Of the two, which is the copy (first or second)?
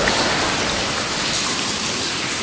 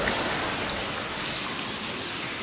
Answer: first